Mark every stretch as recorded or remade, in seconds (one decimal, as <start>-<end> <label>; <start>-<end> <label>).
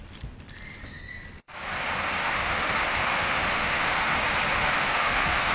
0.0-2.2 recorded; 2.2-4.1 remade; 4.1-4.5 recorded; 4.5-5.5 remade